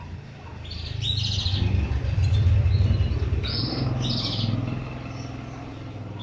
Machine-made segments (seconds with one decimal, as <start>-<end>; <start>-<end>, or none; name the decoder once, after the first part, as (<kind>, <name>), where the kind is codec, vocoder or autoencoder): none